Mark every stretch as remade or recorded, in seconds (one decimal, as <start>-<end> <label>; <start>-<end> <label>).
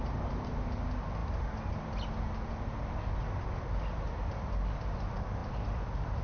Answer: 0.0-6.2 recorded